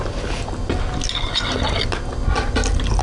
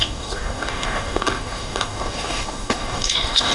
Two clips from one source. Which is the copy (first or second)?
second